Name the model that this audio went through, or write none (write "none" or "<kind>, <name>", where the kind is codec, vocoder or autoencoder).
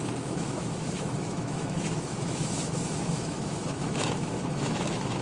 autoencoder, DAC-VAE